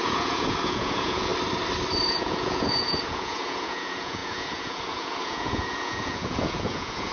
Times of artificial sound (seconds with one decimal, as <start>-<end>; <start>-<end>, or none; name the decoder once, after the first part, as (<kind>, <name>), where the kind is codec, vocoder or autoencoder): 0.0-1.3 (vocoder, Vocos); 2.1-7.1

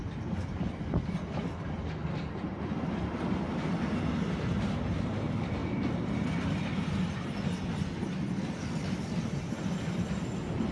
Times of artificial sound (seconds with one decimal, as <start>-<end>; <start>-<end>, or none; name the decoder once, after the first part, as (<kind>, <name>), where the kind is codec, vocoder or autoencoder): none

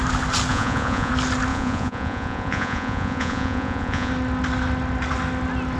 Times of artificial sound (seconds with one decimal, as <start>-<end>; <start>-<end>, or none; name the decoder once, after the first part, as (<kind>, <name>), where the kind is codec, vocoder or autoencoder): 0.5-1.1 (vocoder, Vocos); 1.5-4.1

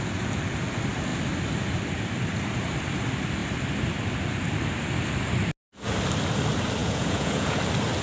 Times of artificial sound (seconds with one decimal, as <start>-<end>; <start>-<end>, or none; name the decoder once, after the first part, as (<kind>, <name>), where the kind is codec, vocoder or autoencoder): 6.8-7.6 (vocoder, Vocos)

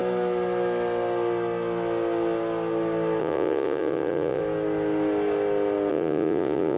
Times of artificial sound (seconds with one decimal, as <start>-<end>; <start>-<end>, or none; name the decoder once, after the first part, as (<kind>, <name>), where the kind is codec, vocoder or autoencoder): 3.2-4.4 (vocoder, Vocos); 5.9-6.8